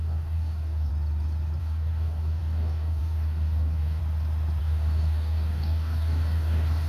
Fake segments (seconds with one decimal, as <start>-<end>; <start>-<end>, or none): 0.0-0.9; 1.6-4.0; 4.6-6.9

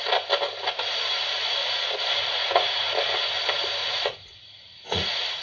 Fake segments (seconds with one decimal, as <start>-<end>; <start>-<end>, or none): 1.6-2.7; 3.8-5.4

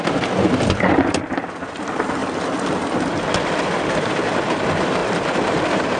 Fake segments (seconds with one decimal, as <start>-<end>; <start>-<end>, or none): 0.0-6.0

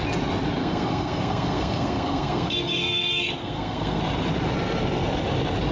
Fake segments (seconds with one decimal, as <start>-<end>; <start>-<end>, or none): 0.6-4.0

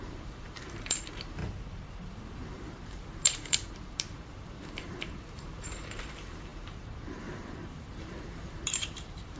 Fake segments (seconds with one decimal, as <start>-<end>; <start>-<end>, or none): 0.0-1.4; 2.4-9.4

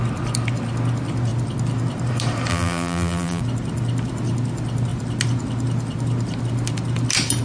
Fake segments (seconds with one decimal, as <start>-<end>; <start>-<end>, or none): 2.5-3.4

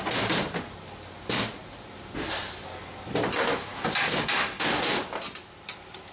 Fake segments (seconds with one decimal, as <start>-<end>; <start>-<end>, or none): none